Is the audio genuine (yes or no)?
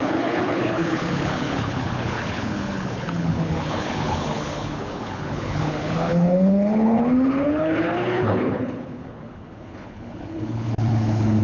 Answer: no